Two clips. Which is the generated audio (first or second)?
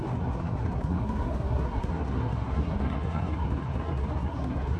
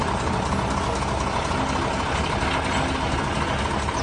first